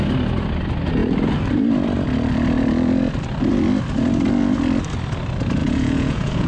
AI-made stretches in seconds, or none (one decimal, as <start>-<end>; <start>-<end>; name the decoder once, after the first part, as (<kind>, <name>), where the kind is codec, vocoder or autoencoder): 5.6-6.5 (vocoder, Vocos)

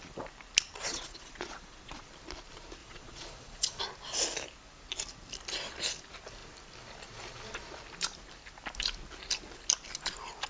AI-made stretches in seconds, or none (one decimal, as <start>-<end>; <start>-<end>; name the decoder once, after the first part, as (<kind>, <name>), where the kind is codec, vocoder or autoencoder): 0.9-2.1 (vocoder, Vocos); 2.8-3.8